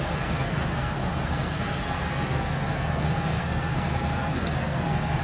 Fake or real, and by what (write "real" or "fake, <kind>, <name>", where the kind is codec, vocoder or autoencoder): fake, codec, SNAC